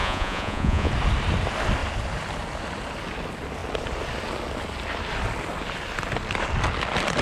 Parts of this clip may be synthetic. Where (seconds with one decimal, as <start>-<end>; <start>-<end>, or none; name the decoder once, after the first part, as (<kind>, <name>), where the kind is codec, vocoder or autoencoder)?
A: 0.0-0.9 (vocoder, Vocos)